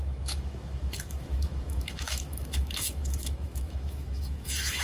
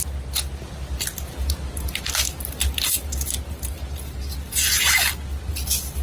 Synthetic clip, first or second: first